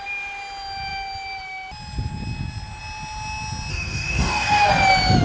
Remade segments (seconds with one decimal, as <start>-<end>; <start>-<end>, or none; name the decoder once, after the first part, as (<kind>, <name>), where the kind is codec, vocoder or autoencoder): 3.7-4.7 (codec, DAC)